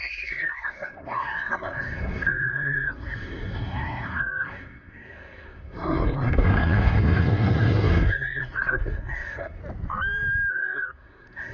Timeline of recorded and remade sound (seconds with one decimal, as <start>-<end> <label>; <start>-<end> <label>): 0.0-9.6 remade; 9.6-10.5 recorded; 10.5-11.5 remade